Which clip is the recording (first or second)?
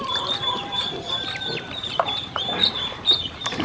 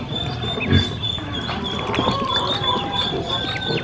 second